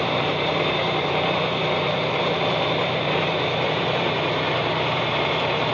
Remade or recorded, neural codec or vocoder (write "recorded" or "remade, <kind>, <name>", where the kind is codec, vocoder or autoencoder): remade, vocoder, BigVGAN v2